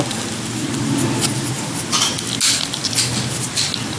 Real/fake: real